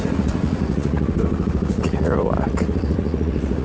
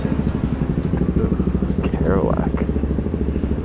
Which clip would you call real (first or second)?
second